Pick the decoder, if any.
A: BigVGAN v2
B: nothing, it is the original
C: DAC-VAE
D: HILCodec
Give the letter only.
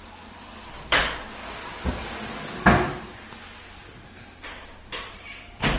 B